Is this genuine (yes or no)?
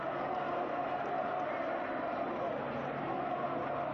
yes